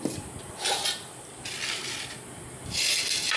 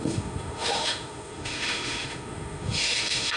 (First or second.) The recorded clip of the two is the first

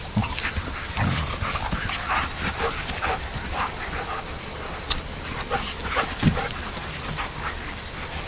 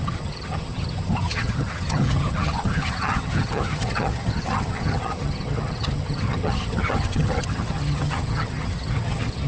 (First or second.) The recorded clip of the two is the first